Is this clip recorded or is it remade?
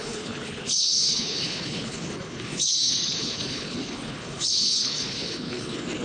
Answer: remade